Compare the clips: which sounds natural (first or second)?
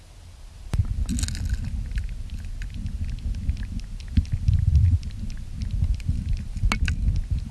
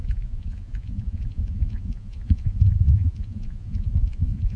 first